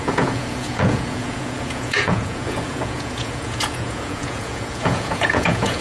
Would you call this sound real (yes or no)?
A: no